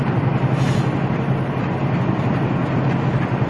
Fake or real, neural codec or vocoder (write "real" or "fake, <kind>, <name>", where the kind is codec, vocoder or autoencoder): real